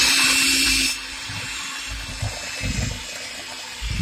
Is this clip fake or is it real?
fake